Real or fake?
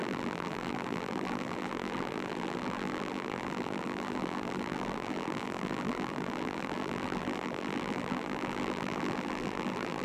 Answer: fake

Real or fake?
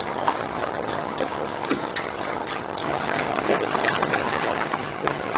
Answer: fake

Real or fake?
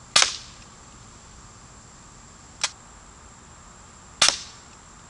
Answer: real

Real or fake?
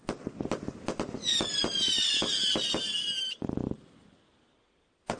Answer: real